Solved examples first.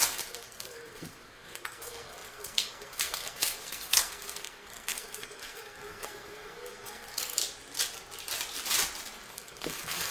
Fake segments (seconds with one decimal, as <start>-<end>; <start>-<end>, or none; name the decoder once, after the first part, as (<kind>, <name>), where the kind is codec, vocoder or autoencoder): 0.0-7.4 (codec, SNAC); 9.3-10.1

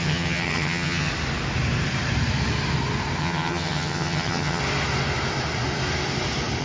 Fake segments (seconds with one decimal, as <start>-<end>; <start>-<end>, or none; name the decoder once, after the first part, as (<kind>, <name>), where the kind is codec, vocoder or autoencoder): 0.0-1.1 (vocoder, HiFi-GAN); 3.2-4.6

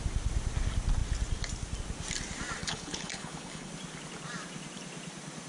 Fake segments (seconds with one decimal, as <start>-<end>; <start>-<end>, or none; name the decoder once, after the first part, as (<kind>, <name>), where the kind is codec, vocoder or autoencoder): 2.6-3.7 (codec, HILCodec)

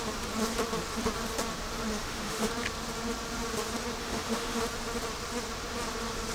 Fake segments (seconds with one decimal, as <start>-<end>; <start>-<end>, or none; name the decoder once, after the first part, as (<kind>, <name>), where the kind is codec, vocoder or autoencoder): 2.0-2.5 (autoencoder, DAC-VAE); 4.0-4.6

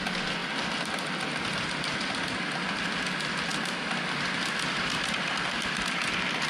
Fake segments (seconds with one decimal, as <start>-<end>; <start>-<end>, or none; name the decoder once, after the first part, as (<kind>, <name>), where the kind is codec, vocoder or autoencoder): 0.0-3.5 (vocoder, BigVGAN v2); 4.2-6.5

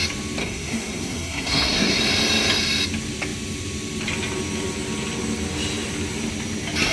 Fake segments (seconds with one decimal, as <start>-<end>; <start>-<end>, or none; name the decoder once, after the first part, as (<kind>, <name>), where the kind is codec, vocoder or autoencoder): 0.4-2.0 (codec, SNAC)

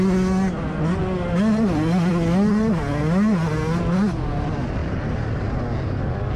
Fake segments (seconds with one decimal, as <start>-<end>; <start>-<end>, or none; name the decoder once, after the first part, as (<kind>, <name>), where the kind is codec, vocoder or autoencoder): none

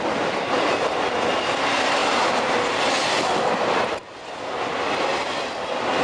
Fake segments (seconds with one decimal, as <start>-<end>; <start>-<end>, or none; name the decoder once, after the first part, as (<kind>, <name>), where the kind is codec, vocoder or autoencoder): none